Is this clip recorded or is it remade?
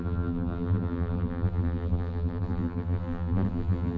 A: remade